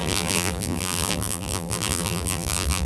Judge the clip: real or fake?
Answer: fake